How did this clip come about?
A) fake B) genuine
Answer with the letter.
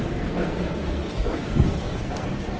A